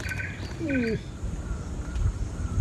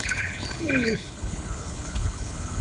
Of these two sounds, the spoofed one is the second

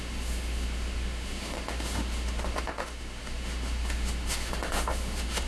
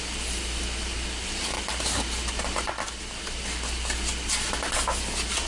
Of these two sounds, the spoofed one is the first